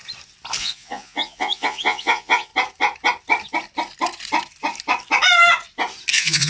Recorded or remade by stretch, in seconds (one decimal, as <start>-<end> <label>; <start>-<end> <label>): 0.0-0.6 recorded; 0.6-2.5 remade; 2.5-6.1 recorded; 6.1-6.5 remade